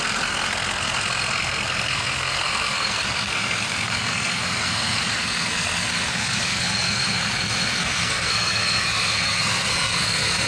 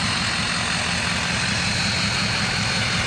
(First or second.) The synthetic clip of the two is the first